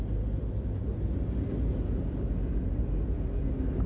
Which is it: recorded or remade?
recorded